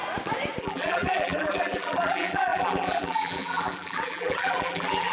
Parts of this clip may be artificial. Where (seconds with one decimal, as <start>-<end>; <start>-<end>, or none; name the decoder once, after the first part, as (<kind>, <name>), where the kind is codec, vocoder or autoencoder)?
0.6-5.1 (vocoder, BigVGAN v2)

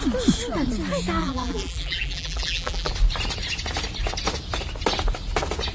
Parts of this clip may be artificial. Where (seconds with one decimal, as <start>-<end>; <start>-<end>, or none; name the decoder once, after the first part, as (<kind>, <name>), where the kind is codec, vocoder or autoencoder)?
1.2-2.9 (vocoder, BigVGAN v2)